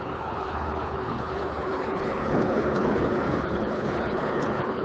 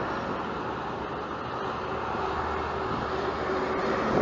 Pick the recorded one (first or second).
second